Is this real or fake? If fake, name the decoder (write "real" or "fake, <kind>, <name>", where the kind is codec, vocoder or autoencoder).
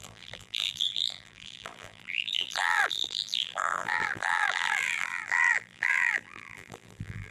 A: fake, vocoder, BigVGAN v2